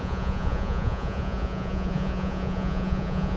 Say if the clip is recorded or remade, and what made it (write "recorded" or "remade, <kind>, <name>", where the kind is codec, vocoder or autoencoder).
remade, vocoder, Vocos